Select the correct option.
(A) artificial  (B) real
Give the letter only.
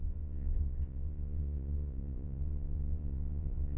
A